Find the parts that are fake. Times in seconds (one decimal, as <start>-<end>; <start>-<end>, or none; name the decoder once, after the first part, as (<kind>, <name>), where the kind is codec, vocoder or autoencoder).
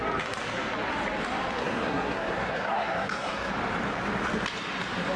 1.6-3.5 (codec, SNAC)